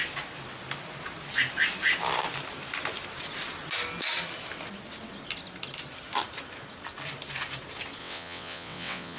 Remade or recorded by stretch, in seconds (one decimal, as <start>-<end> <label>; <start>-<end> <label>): 0.0-8.0 recorded; 8.0-9.2 remade